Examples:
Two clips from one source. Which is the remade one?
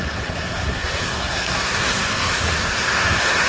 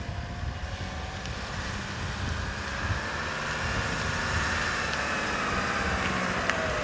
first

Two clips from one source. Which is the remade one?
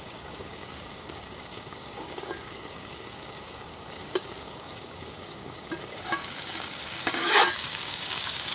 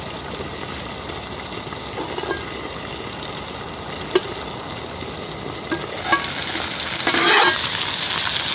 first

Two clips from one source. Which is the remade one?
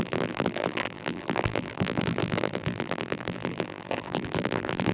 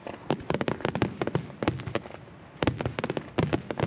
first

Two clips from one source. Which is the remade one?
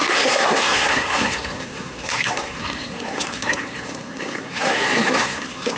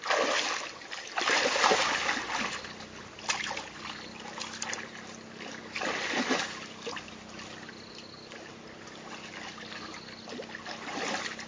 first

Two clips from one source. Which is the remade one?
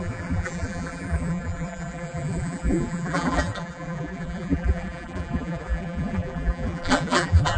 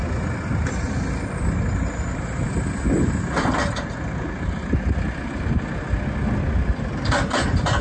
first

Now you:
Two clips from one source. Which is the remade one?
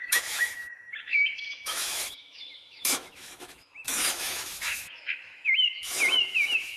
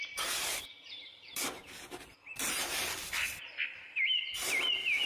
first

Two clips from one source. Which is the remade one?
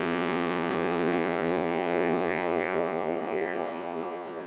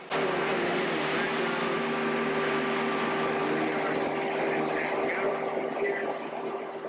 first